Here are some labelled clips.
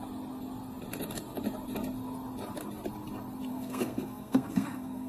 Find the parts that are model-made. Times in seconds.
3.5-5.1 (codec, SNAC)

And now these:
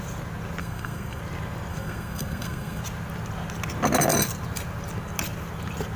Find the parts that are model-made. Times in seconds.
0.6-1.2 (codec, SNAC); 1.7-2.8

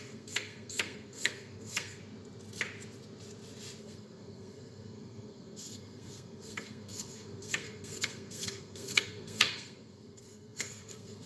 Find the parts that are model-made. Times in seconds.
0.0-2.0 (codec, SNAC); 3.8-11.3

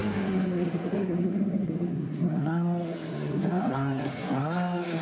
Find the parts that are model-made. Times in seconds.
0.0-5.0 (codec, SNAC)

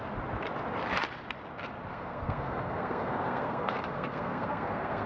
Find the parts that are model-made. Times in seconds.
1.9-5.1 (codec, SNAC)

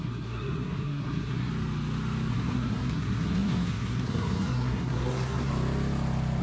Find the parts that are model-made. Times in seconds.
0.0-1.5 (codec, SNAC); 2.3-5.5

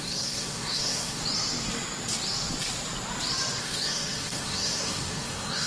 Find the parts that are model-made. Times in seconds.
0.0-1.2 (codec, SNAC); 3.6-5.7

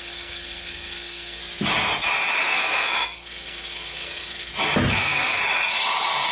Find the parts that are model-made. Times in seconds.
0.0-1.4 (codec, SNAC); 2.4-4.5; 5.0-5.4